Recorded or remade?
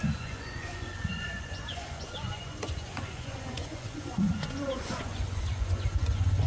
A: remade